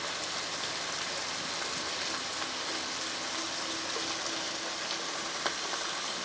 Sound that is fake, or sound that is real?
real